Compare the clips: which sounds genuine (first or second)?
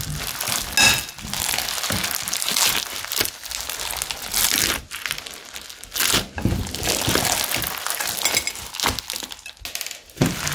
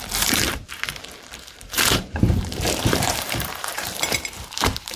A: first